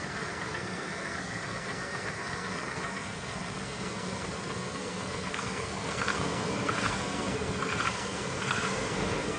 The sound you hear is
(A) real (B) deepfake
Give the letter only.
B